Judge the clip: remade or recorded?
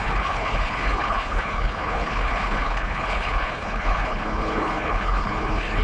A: remade